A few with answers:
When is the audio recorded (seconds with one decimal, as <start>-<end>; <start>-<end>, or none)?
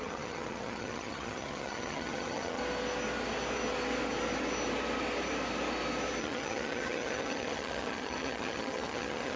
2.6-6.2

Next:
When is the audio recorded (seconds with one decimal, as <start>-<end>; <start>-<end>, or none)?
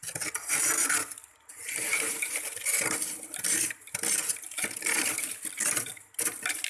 0.0-6.7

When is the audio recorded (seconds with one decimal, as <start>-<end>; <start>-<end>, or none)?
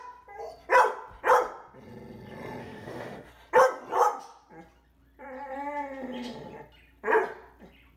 0.0-2.6; 3.3-8.0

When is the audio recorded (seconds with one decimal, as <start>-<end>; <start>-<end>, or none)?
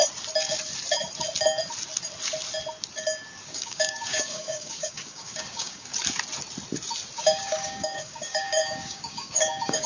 0.0-3.4; 5.9-7.2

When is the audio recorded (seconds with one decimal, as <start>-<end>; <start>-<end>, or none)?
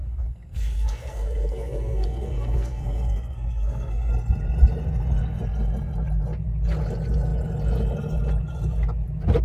4.1-9.4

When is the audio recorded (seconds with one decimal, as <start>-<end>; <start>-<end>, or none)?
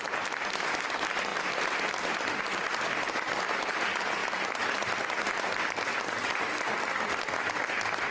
0.0-8.1